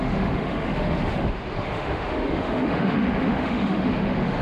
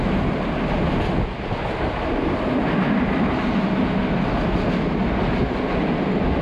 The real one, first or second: second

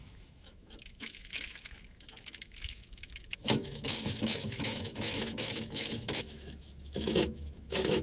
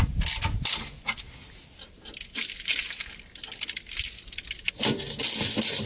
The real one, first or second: second